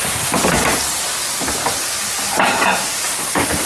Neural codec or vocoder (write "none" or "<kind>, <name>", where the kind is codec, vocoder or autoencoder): vocoder, BigVGAN v2